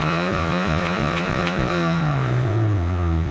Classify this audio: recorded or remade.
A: remade